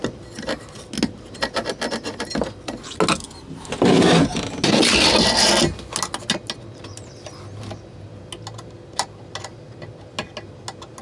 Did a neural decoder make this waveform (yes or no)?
no